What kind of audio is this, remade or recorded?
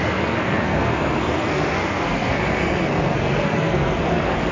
remade